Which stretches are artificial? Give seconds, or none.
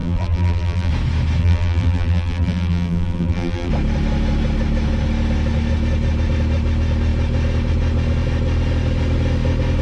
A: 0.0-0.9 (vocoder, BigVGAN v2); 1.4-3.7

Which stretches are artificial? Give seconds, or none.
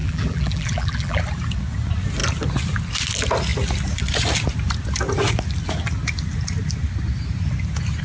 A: 0.0-1.2 (vocoder, BigVGAN v2)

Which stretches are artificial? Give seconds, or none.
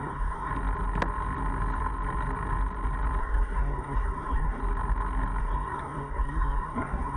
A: 0.0-0.5 (codec, SNAC); 3.2-4.6; 5.4-7.2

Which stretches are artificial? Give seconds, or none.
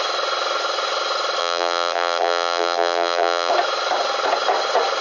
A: 1.4-3.5 (vocoder, BigVGAN v2)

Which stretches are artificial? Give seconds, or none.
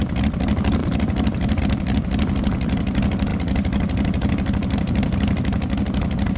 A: 0.8-1.6 (vocoder, BigVGAN v2)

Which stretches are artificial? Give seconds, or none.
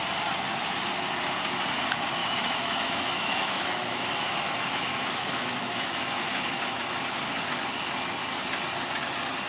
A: 2.2-7.0 (autoencoder, DAC-VAE)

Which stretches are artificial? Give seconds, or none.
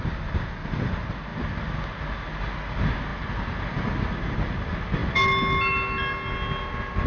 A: none